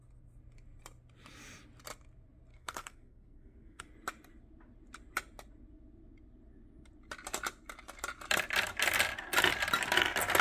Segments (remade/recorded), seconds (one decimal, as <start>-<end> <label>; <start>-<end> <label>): 0.0-2.5 recorded; 2.5-3.8 remade; 3.8-10.4 recorded